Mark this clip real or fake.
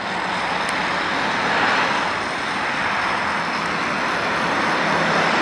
real